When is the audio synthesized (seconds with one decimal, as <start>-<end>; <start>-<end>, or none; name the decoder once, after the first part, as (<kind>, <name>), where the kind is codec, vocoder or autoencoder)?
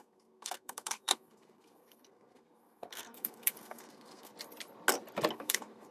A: 0.0-4.3 (codec, SNAC); 5.3-5.9